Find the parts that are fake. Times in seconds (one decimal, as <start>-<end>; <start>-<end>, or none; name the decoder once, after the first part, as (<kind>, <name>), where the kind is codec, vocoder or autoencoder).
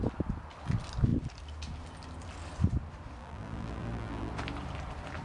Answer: 3.2-4.3 (vocoder, BigVGAN v2)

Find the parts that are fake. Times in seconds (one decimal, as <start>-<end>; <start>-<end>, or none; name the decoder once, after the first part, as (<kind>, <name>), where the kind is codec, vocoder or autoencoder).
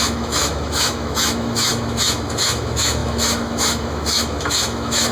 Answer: 0.0-5.1 (autoencoder, DAC-VAE)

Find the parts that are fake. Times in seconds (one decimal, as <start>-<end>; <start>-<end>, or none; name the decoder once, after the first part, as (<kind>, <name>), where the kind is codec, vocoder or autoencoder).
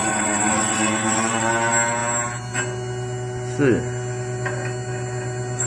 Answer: 0.0-1.5 (vocoder, WaveNeXt)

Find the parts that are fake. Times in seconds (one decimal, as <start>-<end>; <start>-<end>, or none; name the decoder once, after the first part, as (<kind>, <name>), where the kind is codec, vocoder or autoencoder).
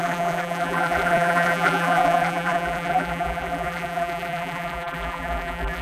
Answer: 0.0-5.8 (vocoder, BigVGAN v2)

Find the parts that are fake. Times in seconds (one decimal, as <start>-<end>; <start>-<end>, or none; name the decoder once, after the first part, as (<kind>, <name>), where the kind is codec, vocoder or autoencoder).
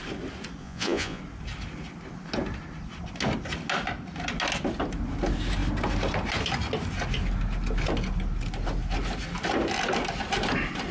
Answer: 0.6-1.2 (vocoder, Vocos)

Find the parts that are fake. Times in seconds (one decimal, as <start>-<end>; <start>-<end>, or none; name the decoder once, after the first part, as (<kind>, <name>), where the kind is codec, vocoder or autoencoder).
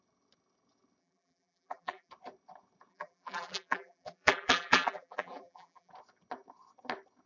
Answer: 1.0-2.1 (vocoder, BigVGAN v2); 2.9-5.9